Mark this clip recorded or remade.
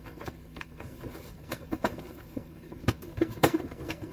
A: remade